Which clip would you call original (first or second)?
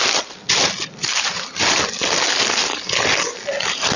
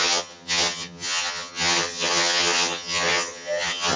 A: first